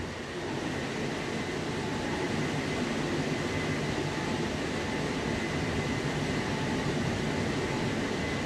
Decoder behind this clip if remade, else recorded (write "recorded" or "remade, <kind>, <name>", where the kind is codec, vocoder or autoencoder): recorded